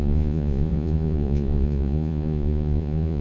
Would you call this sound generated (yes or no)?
yes